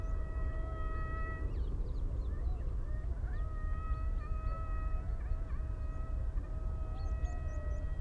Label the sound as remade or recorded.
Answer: recorded